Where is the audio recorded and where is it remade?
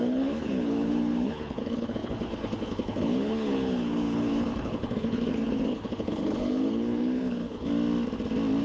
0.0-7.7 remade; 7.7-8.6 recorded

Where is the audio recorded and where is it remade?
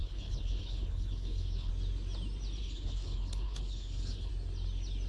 0.0-1.7 remade; 1.7-2.6 recorded; 2.6-4.3 remade; 4.3-5.1 recorded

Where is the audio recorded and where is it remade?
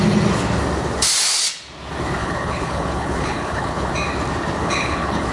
0.0-2.2 recorded; 2.2-3.9 remade; 3.9-4.6 recorded; 4.6-5.3 remade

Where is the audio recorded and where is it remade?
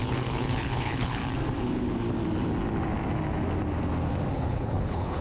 0.0-1.2 remade; 1.2-4.3 recorded; 4.3-5.2 remade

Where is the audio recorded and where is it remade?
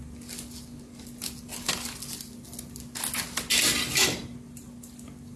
0.0-5.4 recorded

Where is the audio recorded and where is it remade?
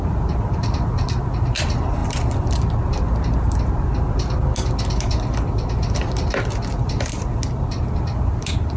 0.0-8.8 recorded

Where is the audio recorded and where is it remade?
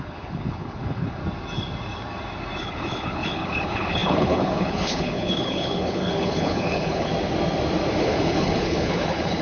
0.0-1.2 remade; 1.2-2.6 recorded; 2.6-7.1 remade; 7.1-8.0 recorded; 8.0-9.4 remade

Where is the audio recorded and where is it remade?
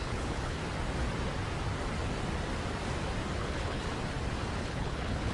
0.0-0.6 remade; 0.6-3.4 recorded; 3.4-3.9 remade; 3.9-4.6 recorded; 4.6-5.3 remade